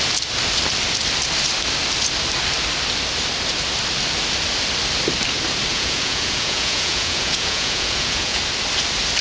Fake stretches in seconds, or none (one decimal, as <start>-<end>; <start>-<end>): 5.7-8.4

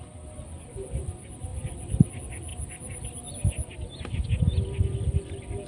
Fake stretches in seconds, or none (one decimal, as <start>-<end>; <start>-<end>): none

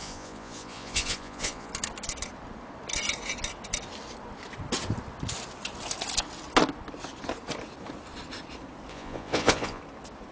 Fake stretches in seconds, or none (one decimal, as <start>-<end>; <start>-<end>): 0.0-1.7; 8.9-9.8

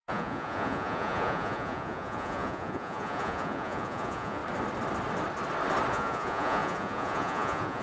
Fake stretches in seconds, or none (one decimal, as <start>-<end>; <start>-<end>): 0.0-4.4; 5.9-7.8

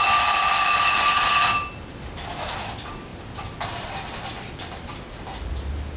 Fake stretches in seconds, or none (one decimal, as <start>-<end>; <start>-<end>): 3.1-5.1

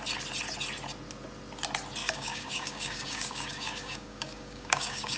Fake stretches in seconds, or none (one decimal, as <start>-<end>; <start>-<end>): 2.0-5.2

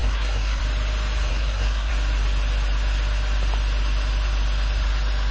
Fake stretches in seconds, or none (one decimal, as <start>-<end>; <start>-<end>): 0.0-0.6; 1.3-1.9

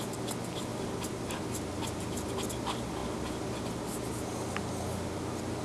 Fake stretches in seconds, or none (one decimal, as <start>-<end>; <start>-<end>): none